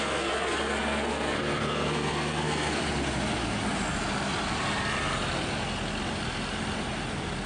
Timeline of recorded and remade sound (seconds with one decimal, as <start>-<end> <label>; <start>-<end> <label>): 0.0-2.8 remade; 2.8-7.5 recorded